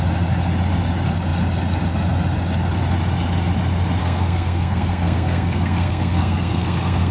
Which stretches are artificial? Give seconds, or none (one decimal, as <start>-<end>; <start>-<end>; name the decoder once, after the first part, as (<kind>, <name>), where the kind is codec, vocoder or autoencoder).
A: 4.0-7.1 (codec, SNAC)